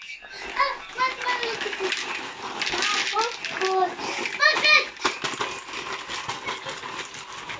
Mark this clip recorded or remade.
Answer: recorded